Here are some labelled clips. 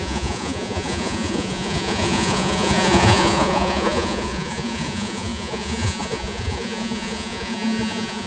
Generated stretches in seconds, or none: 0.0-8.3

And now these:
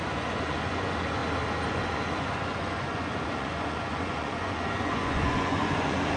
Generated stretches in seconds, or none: 0.0-1.2; 1.7-6.2

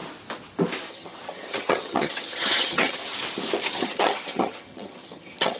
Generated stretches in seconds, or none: 0.9-3.0; 3.7-5.6

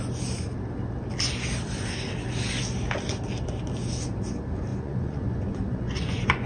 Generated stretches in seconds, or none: 4.7-6.5

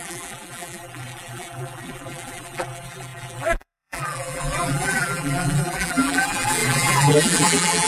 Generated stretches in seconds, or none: 0.0-7.9

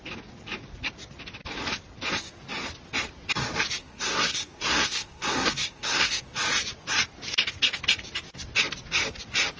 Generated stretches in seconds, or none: 3.8-6.2